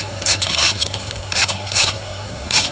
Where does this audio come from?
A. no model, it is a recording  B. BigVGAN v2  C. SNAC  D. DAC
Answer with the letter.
C